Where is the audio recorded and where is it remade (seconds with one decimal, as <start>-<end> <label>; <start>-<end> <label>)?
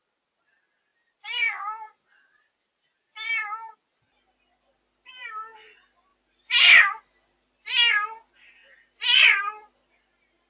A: 0.0-0.9 recorded; 0.9-3.7 remade; 3.7-6.1 recorded; 6.1-7.9 remade; 7.9-10.5 recorded